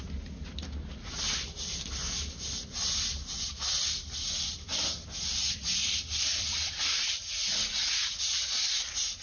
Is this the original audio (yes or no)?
yes